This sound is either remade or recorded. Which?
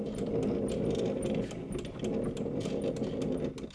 recorded